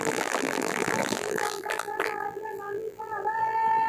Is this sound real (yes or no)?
no